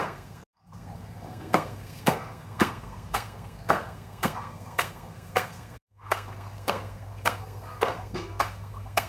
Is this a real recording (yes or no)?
no